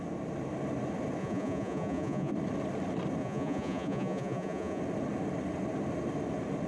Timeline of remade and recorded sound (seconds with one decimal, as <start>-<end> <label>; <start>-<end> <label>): 0.0-1.2 recorded; 1.2-2.3 remade; 2.3-3.2 recorded; 3.2-4.8 remade; 4.8-6.7 recorded

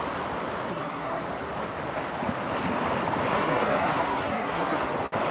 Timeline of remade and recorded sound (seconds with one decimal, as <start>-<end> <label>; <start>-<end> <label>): 0.0-0.7 recorded; 0.7-1.2 remade; 1.2-3.3 recorded; 3.3-4.8 remade; 4.8-5.3 recorded

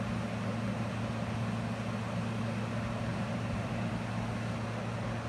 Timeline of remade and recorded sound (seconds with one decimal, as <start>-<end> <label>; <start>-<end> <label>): 0.0-3.1 recorded; 3.1-3.9 remade; 3.9-5.3 recorded

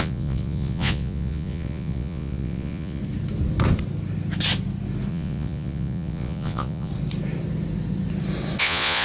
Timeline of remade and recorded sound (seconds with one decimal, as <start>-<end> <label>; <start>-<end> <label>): 0.0-3.0 remade; 3.0-5.1 recorded; 5.1-6.9 remade; 6.9-8.6 recorded; 8.6-9.0 remade

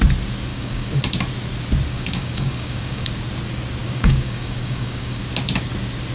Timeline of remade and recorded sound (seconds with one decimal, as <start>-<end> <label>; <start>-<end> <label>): 0.0-0.5 recorded; 0.5-1.0 remade; 1.0-1.9 recorded; 1.9-3.1 remade; 3.1-3.8 recorded; 3.8-5.2 remade; 5.2-6.1 recorded

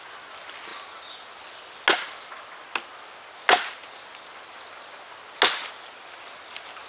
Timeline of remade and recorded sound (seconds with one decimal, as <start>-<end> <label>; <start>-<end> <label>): 0.0-6.9 recorded

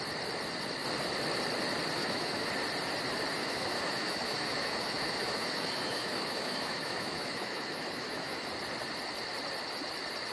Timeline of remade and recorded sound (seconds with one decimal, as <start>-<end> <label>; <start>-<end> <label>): 0.0-2.0 recorded; 2.0-2.5 remade; 2.5-3.4 recorded; 3.4-8.5 remade; 8.5-10.3 recorded

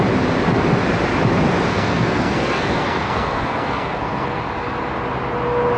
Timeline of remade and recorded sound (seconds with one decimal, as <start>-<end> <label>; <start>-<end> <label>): 0.0-1.7 recorded; 1.7-4.4 remade; 4.4-5.8 recorded